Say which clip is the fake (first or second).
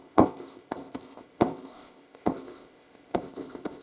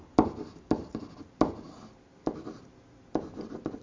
first